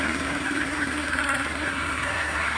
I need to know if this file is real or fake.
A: fake